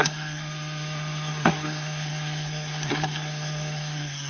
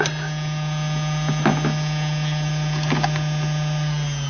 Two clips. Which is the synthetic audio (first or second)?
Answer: first